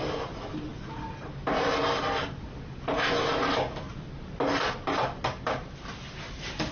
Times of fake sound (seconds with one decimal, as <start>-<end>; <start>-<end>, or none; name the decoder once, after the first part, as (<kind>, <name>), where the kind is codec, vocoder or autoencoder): none